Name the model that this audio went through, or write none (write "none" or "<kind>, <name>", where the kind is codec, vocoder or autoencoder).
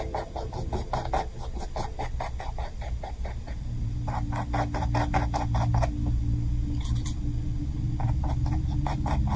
none